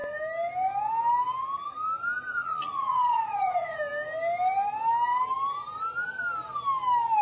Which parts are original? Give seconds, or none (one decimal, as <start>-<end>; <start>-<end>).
0.0-2.3; 3.8-7.2